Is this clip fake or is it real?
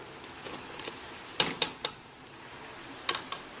real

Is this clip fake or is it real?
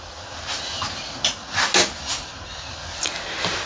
real